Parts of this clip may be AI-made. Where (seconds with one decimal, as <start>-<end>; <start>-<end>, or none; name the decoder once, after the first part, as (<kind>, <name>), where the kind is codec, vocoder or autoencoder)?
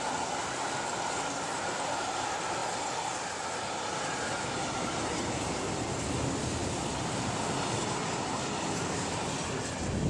none